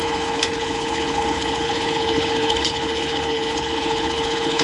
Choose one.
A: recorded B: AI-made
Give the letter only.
B